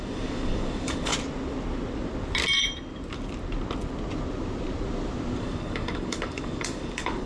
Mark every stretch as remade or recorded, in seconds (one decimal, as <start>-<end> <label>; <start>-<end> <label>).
0.0-1.1 remade; 1.1-5.4 recorded; 5.4-7.3 remade